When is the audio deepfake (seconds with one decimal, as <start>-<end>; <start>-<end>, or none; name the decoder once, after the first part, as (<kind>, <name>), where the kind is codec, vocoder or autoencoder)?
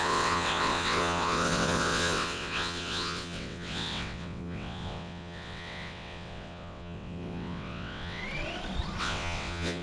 0.0-8.2 (vocoder, WaveNeXt); 9.0-9.8